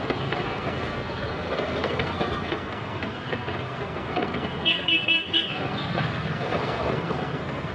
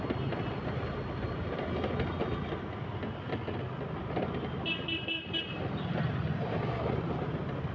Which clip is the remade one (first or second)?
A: first